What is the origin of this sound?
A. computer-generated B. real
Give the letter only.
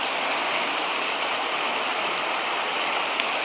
B